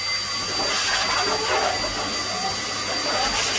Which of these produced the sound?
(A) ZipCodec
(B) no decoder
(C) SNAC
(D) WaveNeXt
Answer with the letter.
B